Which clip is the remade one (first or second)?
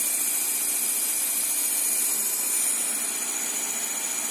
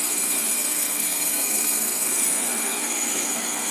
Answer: second